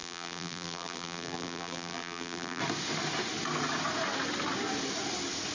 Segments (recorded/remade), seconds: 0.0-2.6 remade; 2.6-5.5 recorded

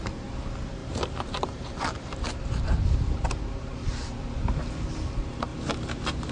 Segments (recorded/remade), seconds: 0.0-0.8 recorded; 0.8-3.0 remade; 3.0-5.5 recorded; 5.5-6.3 remade

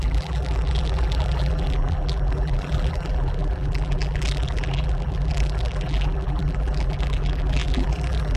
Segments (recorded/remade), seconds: 0.0-8.4 remade

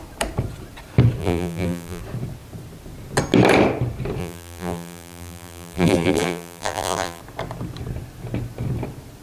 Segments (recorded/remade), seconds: 0.0-1.2 recorded; 1.2-2.0 remade; 2.0-4.2 recorded; 4.2-7.2 remade; 7.2-9.2 recorded